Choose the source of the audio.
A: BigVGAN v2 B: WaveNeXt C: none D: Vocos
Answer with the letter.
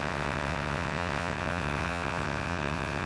B